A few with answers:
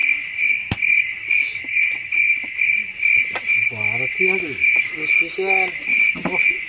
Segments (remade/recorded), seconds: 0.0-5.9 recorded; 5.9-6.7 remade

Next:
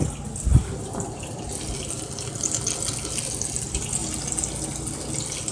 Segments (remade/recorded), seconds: 0.0-5.5 recorded